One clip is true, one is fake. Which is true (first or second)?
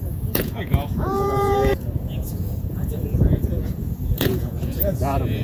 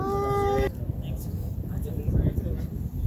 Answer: second